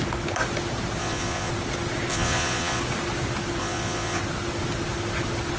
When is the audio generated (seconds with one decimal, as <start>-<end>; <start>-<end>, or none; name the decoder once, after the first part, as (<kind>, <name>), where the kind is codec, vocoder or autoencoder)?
1.0-1.5 (vocoder, Vocos); 2.1-2.8; 3.6-4.2